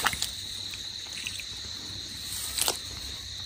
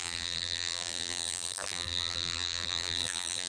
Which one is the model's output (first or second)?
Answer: second